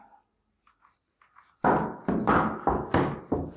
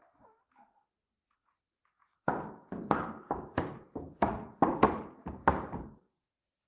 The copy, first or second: second